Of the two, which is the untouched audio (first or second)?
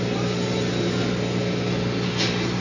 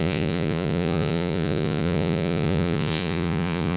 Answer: first